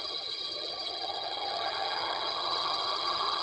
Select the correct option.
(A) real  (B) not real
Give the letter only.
B